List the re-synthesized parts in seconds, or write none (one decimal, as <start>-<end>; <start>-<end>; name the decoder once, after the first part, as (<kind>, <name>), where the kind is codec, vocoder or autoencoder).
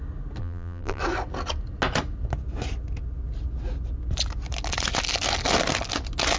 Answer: 0.4-1.0 (vocoder, BigVGAN v2)